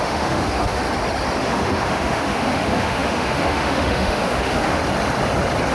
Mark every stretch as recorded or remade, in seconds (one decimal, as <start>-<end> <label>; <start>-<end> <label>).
0.0-0.8 remade; 0.8-1.4 recorded; 1.4-4.8 remade; 4.8-5.7 recorded